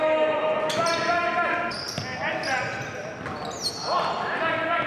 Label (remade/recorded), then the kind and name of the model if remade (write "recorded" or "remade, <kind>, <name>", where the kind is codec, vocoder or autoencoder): recorded